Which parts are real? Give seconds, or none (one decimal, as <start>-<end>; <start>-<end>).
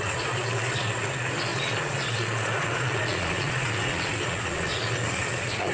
none